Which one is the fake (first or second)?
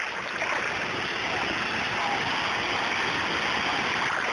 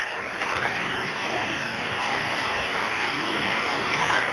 second